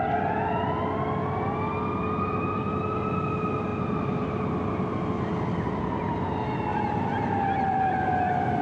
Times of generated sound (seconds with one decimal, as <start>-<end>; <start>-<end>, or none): 3.7-4.5; 6.7-8.1